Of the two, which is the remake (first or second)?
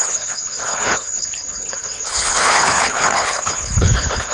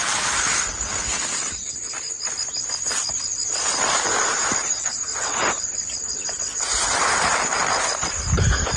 first